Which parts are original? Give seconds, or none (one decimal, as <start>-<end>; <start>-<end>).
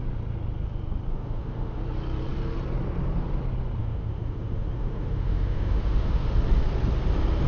0.0-1.1; 1.8-3.8; 6.3-7.5